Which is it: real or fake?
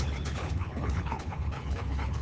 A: fake